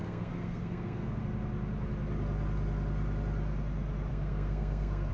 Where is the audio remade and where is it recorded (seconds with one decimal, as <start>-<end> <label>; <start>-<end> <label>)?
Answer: 0.0-1.2 remade; 1.2-4.1 recorded; 4.1-5.1 remade